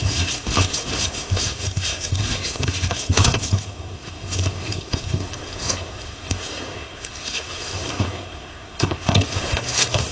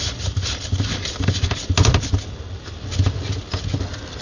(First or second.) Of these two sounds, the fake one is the first